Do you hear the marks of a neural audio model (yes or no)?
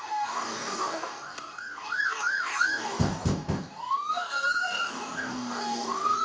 yes